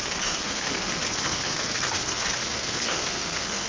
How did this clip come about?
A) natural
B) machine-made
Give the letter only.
B